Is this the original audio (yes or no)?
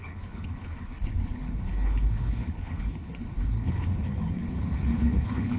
no